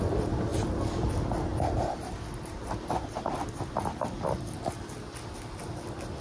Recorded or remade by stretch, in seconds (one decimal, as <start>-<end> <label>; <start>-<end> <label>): 0.0-0.5 recorded; 0.5-1.1 remade; 1.1-1.5 recorded; 1.5-4.6 remade; 4.6-6.2 recorded